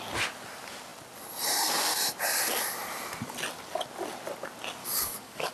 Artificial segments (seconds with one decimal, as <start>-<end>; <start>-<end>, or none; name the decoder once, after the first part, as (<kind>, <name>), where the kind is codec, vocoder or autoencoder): 4.8-5.5 (codec, DAC)